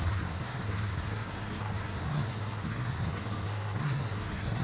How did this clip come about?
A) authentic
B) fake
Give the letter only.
B